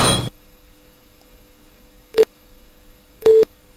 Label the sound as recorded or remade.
remade